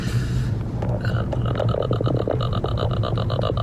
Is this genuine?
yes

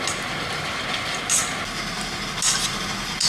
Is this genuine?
yes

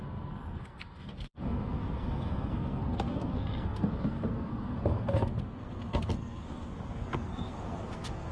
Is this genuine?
no